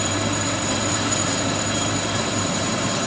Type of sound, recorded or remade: remade